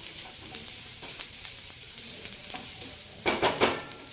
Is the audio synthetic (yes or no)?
yes